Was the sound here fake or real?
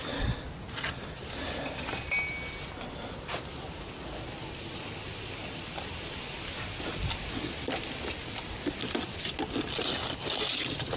real